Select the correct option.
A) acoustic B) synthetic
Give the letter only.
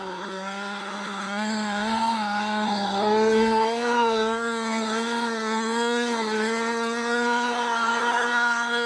B